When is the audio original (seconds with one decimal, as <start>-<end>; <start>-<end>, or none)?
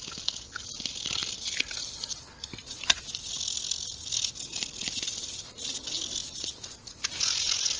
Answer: 0.0-1.2; 4.3-6.2; 7.1-7.8